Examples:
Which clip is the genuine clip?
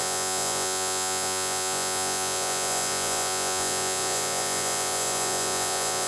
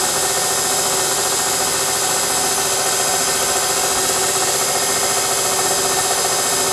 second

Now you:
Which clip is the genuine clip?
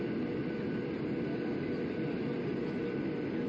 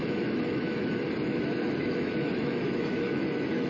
first